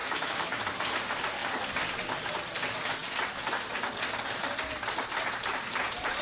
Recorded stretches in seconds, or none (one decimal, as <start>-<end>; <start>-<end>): 0.6-6.2